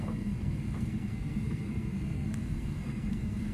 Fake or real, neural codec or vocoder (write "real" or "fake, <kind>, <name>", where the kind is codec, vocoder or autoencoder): fake, codec, SNAC